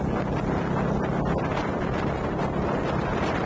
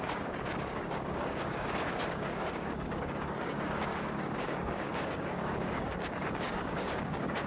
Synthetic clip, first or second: second